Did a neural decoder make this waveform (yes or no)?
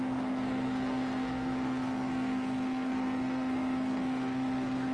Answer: yes